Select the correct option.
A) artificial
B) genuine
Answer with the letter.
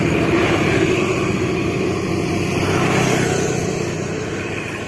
B